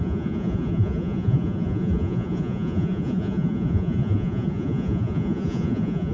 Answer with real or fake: fake